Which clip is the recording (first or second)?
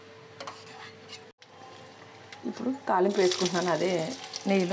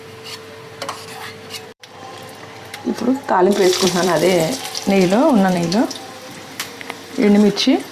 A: first